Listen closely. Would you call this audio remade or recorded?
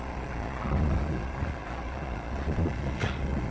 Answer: remade